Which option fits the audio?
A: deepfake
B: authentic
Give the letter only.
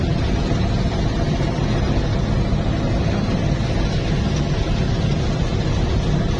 B